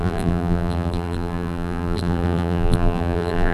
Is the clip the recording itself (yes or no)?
no